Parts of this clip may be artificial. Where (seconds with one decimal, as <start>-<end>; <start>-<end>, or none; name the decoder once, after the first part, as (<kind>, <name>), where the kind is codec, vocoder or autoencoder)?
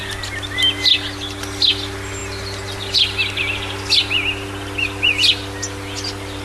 none